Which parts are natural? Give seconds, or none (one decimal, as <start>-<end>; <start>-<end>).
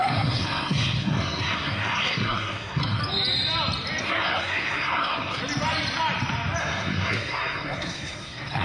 3.0-4.0; 5.4-6.6